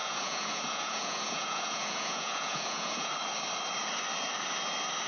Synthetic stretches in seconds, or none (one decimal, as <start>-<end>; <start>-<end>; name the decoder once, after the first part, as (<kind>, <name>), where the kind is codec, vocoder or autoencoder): 0.0-3.1 (vocoder, Vocos)